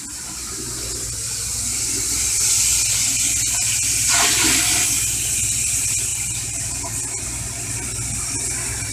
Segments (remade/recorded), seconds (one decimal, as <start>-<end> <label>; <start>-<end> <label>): 0.0-6.1 recorded; 6.1-6.9 remade; 6.9-8.9 recorded